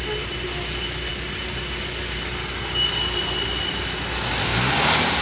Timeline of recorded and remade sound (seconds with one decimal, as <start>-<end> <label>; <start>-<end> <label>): 0.0-5.2 recorded